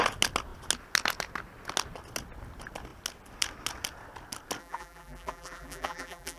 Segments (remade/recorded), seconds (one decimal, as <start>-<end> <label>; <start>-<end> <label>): 0.0-4.6 recorded; 4.6-6.4 remade